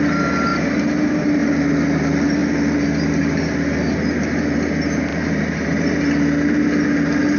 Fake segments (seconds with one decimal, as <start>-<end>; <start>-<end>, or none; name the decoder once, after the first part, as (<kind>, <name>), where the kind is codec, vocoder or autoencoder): 5.1-6.0 (vocoder, BigVGAN v2)